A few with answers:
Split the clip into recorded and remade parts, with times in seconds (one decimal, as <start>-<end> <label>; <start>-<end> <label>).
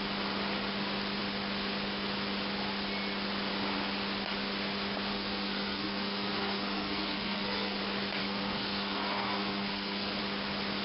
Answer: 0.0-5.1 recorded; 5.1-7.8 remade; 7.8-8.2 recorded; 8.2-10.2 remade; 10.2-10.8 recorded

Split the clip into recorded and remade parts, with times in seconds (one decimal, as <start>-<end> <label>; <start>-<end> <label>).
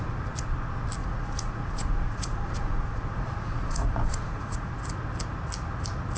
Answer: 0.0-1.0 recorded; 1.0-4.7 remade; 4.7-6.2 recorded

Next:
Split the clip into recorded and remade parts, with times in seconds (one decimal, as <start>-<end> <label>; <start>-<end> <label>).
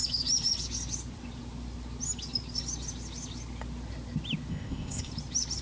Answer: 0.0-4.5 recorded; 4.5-5.1 remade; 5.1-5.6 recorded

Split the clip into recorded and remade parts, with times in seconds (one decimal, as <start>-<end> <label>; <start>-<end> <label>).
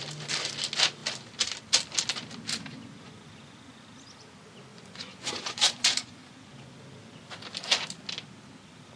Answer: 0.0-2.7 recorded; 2.7-3.8 remade; 3.8-4.7 recorded; 4.7-6.7 remade; 6.7-9.0 recorded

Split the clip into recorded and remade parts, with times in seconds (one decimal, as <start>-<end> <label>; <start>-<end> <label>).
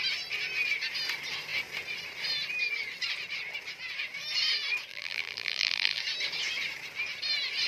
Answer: 0.0-4.9 recorded; 4.9-6.0 remade; 6.0-7.7 recorded